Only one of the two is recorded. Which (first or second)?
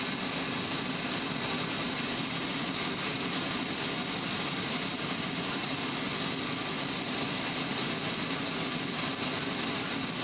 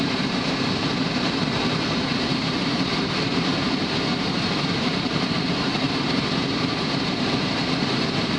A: first